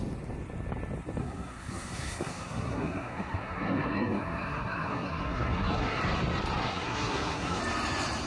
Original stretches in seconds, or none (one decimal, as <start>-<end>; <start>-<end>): 0.0-1.2; 6.0-6.6; 7.6-8.3